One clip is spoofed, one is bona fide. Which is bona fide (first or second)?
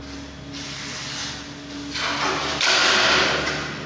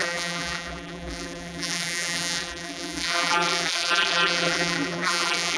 first